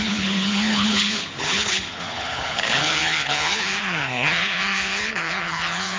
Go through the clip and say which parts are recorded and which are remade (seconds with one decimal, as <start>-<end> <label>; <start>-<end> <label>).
0.0-6.0 remade